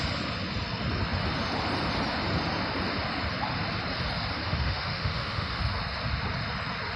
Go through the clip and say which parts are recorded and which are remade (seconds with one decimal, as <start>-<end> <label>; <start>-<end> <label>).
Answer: 0.0-4.4 recorded; 4.4-5.6 remade; 5.6-7.0 recorded